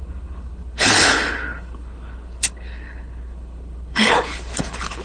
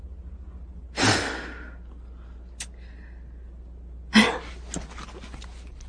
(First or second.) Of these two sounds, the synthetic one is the first